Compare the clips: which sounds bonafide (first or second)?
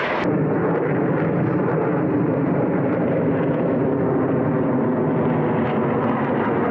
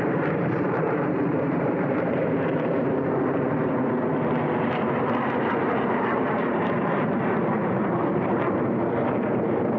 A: first